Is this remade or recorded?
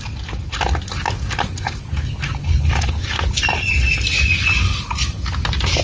recorded